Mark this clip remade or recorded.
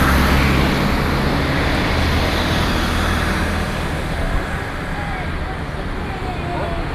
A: recorded